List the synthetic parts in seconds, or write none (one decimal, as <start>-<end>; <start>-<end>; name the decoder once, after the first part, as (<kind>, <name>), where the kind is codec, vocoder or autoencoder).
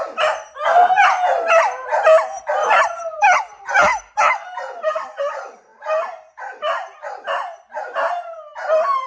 2.6-3.2 (vocoder, BigVGAN v2)